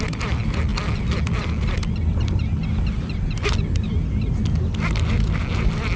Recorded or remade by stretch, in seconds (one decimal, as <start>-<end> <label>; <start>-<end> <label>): 0.0-6.0 recorded